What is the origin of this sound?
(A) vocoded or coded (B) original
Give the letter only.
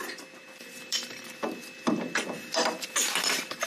A